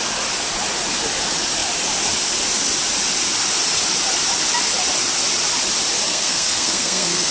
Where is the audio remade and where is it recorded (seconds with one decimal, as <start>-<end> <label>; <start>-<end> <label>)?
0.0-6.1 recorded; 6.1-7.3 remade